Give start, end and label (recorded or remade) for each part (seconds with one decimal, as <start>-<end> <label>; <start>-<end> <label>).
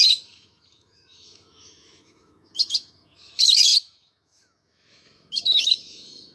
0.0-6.3 remade